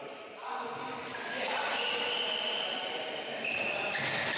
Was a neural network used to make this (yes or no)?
no